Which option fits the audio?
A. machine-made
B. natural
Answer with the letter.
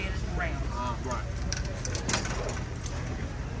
B